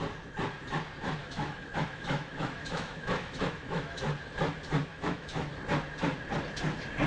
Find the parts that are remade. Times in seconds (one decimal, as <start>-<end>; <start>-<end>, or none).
1.2-4.0; 4.9-5.5